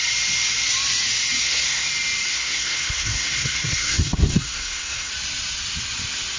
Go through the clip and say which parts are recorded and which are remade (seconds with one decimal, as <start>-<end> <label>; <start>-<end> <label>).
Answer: 0.0-1.4 recorded; 1.4-1.9 remade; 1.9-2.3 recorded; 2.3-5.1 remade; 5.1-6.4 recorded